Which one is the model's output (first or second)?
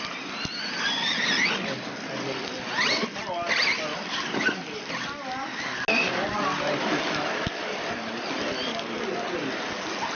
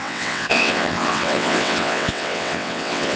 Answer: second